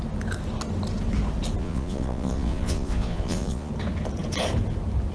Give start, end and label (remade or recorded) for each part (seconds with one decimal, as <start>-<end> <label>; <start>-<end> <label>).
0.0-1.6 recorded; 1.6-3.7 remade; 3.7-5.1 recorded